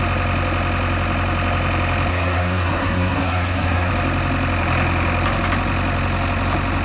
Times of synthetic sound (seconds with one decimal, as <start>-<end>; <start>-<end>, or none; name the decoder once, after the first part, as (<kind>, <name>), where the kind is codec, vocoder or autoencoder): 2.1-3.9 (codec, SNAC)